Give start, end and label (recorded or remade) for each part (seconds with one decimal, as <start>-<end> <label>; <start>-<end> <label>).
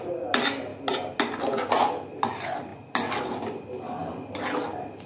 0.0-5.1 recorded